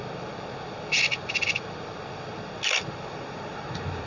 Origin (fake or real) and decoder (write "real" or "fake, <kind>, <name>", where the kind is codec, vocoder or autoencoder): real